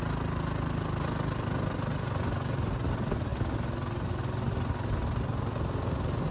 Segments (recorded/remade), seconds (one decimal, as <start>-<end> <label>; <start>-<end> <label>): 0.0-6.3 recorded